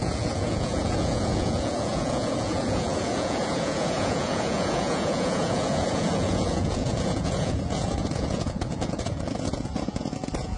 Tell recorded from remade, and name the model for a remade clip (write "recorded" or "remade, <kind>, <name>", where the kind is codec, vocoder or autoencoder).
remade, vocoder, Vocos